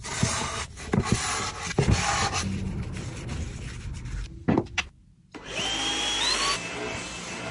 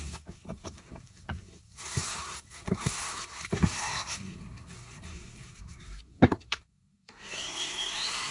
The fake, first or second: second